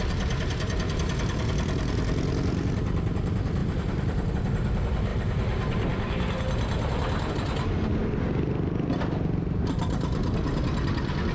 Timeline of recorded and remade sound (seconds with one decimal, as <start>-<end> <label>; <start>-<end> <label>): 0.0-3.6 recorded; 3.6-4.3 remade; 4.3-11.3 recorded